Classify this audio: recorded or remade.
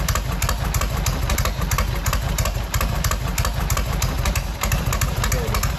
recorded